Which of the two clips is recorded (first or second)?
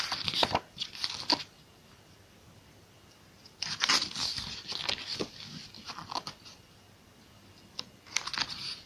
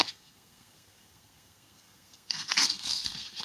first